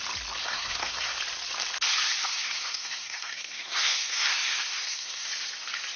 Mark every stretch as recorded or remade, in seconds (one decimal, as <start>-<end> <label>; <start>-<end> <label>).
0.0-0.4 recorded; 0.4-1.2 remade; 1.2-2.3 recorded; 2.3-5.3 remade; 5.3-6.0 recorded